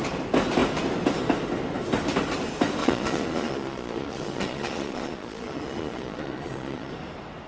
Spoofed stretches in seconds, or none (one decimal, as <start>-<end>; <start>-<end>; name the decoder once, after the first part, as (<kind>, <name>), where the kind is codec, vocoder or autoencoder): 2.8-6.9 (vocoder, Vocos)